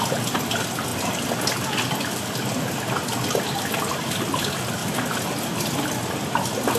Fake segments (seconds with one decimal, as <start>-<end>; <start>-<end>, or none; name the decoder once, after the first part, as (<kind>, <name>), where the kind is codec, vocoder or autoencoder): none